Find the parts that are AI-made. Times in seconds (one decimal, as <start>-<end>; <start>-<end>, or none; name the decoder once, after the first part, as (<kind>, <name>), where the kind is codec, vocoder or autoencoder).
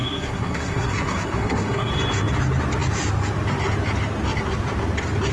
0.0-1.9 (codec, SNAC)